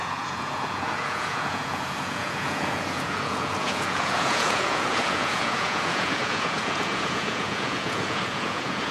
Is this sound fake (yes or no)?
yes